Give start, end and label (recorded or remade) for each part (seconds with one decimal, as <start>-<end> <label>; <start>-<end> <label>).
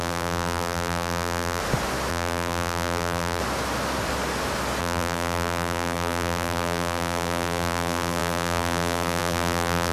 0.0-1.6 remade; 1.6-2.1 recorded; 2.1-3.4 remade; 3.4-4.8 recorded; 4.8-9.9 remade